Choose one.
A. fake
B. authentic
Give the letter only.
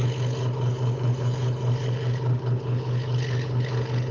A